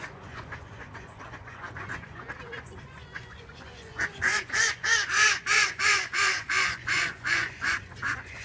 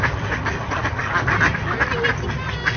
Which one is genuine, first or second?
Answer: second